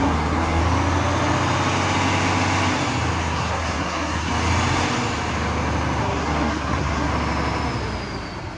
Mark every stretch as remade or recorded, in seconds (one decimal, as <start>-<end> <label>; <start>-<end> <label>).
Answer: 0.0-0.6 remade; 0.6-3.2 recorded; 3.2-4.3 remade; 4.3-6.0 recorded; 6.0-7.1 remade; 7.1-8.6 recorded